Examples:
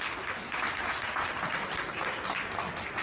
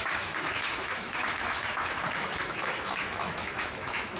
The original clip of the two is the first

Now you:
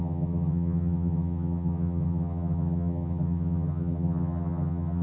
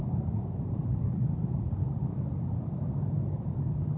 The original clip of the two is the second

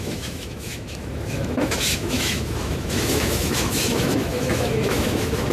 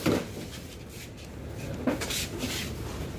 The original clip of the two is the second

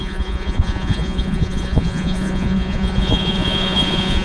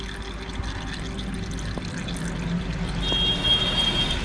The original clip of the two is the second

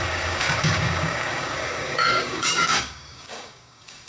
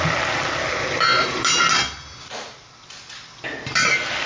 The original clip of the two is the second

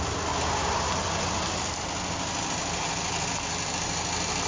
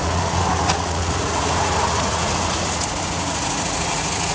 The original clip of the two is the first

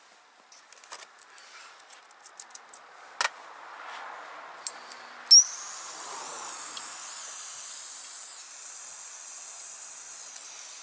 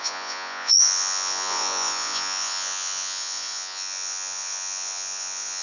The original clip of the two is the first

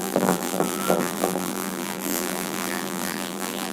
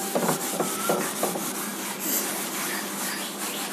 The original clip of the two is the second